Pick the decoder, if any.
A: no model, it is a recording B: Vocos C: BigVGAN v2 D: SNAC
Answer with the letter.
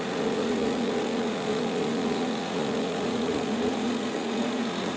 B